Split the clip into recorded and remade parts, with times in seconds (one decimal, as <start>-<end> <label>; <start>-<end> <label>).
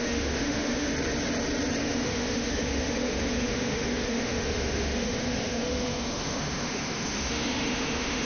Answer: 0.0-0.9 remade; 0.9-1.8 recorded; 1.8-8.2 remade